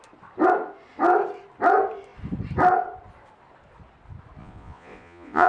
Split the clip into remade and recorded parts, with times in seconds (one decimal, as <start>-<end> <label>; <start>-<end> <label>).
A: 0.0-4.4 recorded; 4.4-5.5 remade